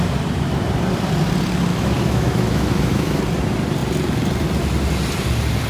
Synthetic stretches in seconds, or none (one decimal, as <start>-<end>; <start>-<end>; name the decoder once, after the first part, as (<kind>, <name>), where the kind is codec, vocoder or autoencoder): 1.7-3.2 (autoencoder, DAC-VAE)